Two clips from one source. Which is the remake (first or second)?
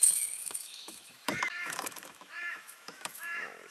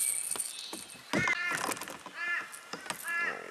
first